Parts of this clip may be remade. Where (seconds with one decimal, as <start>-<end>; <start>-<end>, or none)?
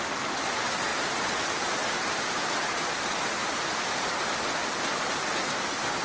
0.9-4.5